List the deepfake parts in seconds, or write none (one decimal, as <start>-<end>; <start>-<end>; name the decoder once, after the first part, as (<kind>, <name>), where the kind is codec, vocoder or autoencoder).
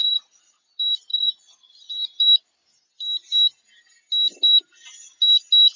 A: 0.0-0.7 (vocoder, Vocos); 1.1-1.9